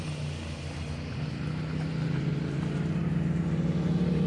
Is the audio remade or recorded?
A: recorded